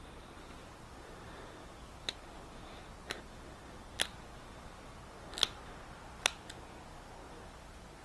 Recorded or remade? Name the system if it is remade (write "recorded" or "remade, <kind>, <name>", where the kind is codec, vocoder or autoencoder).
recorded